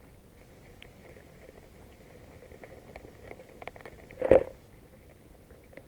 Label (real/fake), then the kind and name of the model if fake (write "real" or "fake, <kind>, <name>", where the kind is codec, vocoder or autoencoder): real